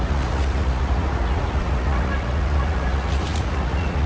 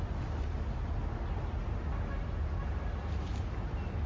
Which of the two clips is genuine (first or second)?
second